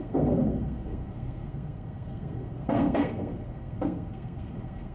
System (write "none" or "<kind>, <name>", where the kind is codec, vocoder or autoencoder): codec, SNAC